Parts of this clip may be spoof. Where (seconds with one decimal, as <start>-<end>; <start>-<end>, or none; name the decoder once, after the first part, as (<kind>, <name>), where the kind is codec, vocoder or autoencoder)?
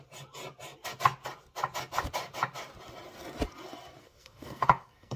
4.0-5.2 (codec, SNAC)